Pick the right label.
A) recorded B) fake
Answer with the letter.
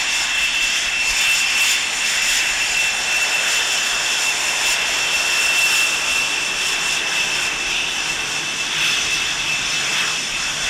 A